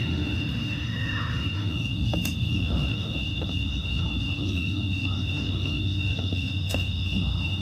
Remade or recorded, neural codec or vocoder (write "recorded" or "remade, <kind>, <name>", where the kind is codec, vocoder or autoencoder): remade, autoencoder, DAC-VAE